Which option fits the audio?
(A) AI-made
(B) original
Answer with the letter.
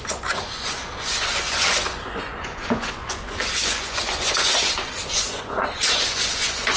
A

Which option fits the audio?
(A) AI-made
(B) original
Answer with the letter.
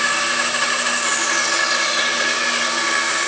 B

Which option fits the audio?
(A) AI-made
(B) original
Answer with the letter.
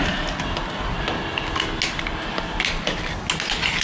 B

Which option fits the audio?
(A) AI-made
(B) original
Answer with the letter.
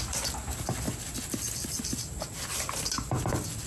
B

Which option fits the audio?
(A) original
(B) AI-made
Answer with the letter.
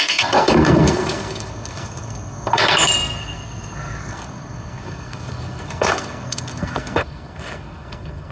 B